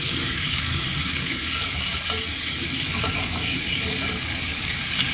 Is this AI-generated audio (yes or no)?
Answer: yes